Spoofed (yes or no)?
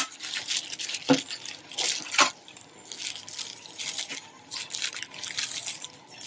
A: no